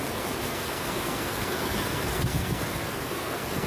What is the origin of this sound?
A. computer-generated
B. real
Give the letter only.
A